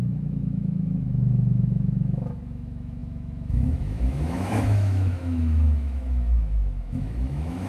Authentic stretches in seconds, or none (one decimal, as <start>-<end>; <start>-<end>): none